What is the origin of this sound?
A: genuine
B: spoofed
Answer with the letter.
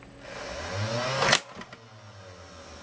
A